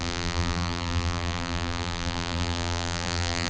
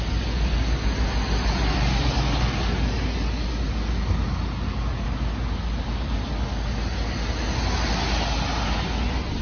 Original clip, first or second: second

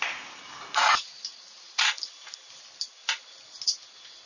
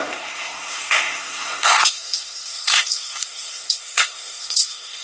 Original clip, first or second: first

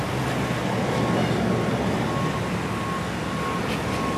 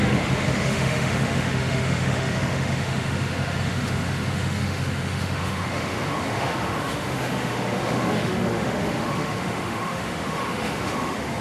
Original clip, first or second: first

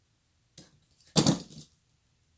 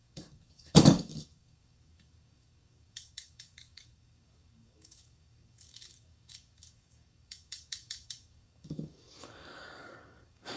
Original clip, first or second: first